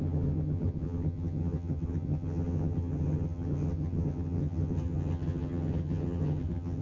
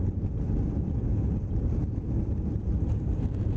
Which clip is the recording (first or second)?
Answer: second